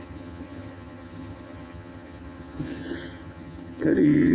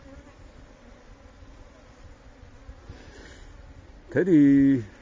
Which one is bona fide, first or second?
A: second